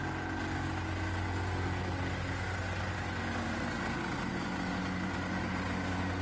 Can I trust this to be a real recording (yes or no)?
yes